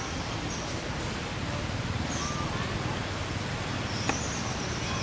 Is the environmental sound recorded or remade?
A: recorded